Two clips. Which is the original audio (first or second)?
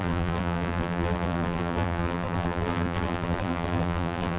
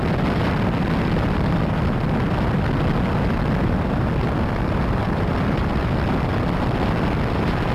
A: second